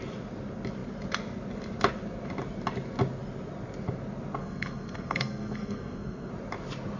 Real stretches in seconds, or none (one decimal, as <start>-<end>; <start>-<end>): 0.0-4.4; 6.3-7.0